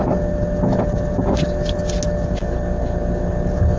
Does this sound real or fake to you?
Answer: real